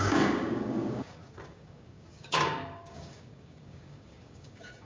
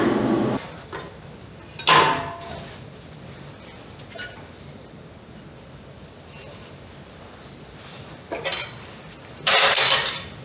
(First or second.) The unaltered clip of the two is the second